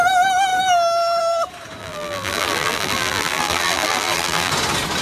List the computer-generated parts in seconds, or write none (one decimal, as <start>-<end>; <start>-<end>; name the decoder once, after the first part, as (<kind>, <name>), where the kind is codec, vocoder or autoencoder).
1.8-4.5 (vocoder, BigVGAN v2)